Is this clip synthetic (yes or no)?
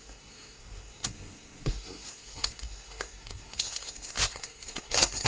yes